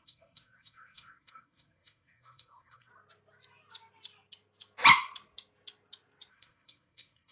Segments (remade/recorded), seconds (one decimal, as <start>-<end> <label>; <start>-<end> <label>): 0.0-2.9 remade; 2.9-6.3 recorded; 6.3-7.3 remade